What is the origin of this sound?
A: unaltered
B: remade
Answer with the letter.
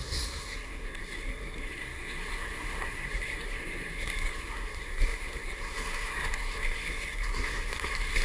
B